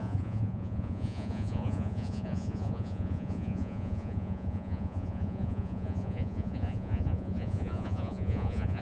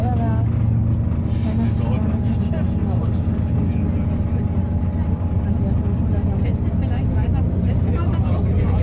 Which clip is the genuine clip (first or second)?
second